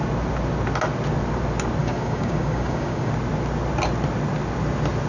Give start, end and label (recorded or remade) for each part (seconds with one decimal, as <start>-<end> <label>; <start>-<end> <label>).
0.0-1.8 recorded; 1.8-3.1 remade; 3.1-5.1 recorded

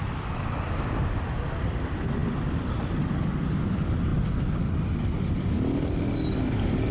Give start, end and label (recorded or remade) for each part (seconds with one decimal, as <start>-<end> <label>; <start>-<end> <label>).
0.0-6.9 recorded

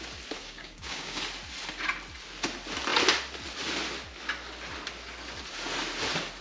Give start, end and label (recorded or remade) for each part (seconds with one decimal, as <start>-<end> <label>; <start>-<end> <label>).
0.0-0.4 recorded; 0.4-1.2 remade; 1.2-6.4 recorded

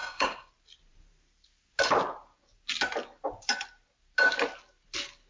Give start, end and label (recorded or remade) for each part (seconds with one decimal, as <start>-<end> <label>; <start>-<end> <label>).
0.0-0.5 remade; 0.5-5.3 recorded

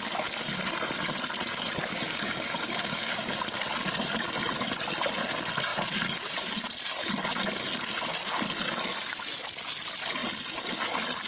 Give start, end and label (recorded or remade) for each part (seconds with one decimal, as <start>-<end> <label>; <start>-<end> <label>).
0.0-1.9 recorded; 1.9-3.4 remade; 3.4-11.3 recorded

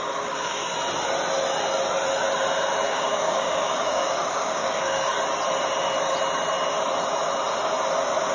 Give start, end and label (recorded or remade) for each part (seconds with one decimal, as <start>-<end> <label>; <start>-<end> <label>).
0.0-0.6 remade; 0.6-2.9 recorded; 2.9-5.1 remade; 5.1-8.3 recorded